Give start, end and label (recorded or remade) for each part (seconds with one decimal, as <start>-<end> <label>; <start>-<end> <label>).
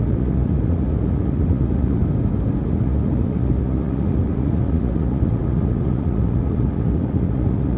0.0-2.0 remade; 2.0-2.6 recorded; 2.6-7.8 remade